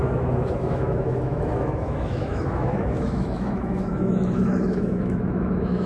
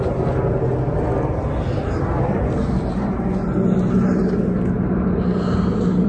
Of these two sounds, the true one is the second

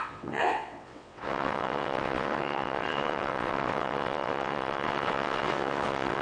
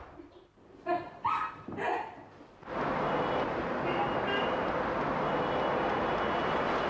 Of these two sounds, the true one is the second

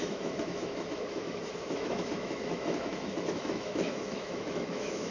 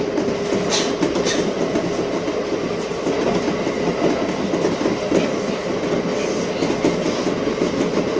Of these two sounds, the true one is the second